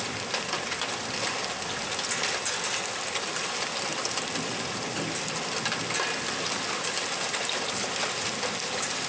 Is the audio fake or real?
real